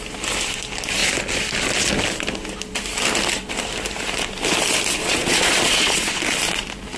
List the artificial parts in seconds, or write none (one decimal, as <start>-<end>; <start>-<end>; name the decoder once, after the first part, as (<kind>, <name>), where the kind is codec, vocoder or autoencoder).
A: 5.0-6.2 (vocoder, Vocos)